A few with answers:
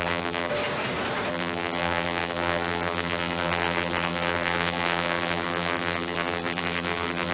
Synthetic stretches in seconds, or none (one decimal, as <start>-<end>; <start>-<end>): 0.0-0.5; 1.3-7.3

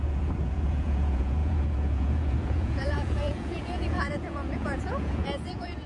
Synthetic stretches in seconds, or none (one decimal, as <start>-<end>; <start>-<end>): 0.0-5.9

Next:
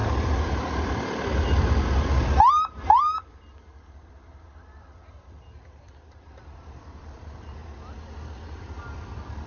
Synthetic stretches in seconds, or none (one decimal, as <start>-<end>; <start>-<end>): 3.2-7.6; 8.6-9.5

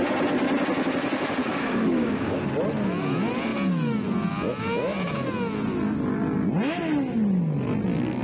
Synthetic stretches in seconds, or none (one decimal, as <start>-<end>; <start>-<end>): 1.5-2.4

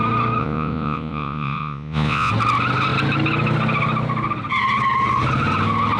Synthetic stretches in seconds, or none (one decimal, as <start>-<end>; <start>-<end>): 0.4-2.3

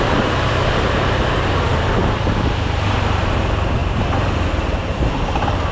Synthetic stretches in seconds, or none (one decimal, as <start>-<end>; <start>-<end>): 0.0-3.8; 4.5-5.7

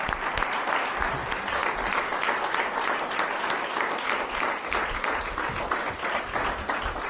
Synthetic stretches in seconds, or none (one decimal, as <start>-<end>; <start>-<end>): none

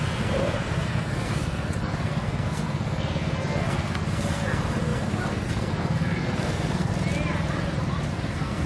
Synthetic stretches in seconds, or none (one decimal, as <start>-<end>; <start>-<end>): 0.0-6.9; 8.1-8.7